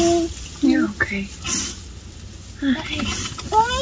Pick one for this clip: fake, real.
real